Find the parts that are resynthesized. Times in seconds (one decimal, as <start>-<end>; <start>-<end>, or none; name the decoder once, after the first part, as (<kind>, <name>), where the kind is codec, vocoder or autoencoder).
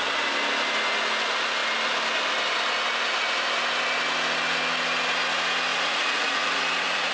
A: 5.7-7.1 (vocoder, Vocos)